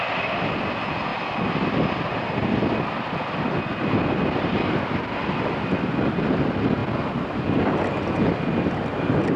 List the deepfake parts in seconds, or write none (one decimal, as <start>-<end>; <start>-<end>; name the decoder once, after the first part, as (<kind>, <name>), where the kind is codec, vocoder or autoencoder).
none